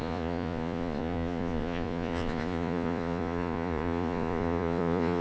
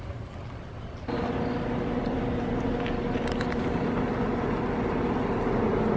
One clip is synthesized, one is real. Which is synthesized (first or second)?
first